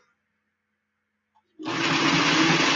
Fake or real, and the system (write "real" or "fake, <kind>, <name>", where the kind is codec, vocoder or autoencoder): real